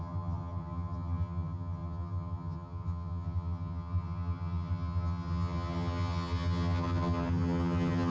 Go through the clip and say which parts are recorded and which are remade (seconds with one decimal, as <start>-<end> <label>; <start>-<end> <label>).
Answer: 0.0-8.1 remade

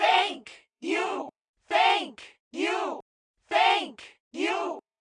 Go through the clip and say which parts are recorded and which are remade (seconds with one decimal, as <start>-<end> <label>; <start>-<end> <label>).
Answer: 0.0-1.5 remade; 1.5-4.5 recorded; 4.5-5.0 remade

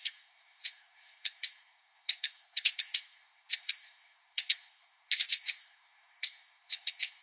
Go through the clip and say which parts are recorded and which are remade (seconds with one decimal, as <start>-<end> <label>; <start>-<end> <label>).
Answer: 0.0-7.2 remade

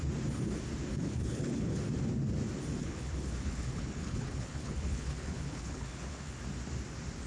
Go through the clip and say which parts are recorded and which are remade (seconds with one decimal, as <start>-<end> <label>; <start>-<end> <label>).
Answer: 0.0-0.9 recorded; 0.9-1.8 remade; 1.8-2.8 recorded; 2.8-6.4 remade; 6.4-7.3 recorded

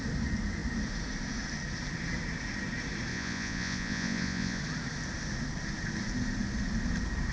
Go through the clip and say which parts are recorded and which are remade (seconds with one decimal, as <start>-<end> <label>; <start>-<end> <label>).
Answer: 0.0-3.1 recorded; 3.1-4.6 remade; 4.6-7.3 recorded